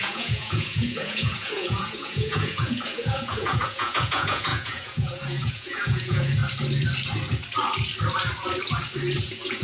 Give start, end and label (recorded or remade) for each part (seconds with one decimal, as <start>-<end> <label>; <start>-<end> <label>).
0.0-6.4 remade; 6.4-9.2 recorded; 9.2-9.6 remade